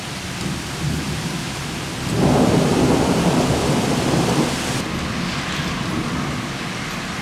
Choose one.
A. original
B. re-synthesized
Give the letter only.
A